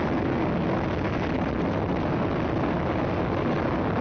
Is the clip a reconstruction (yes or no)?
no